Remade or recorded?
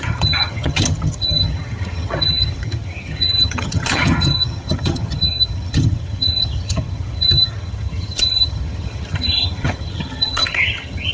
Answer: remade